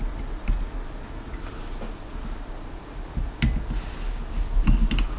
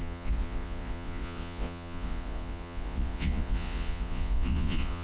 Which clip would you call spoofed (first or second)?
second